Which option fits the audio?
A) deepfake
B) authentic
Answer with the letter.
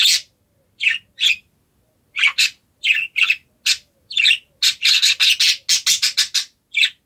B